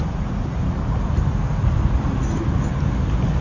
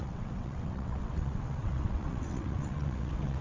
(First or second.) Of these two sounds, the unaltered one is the first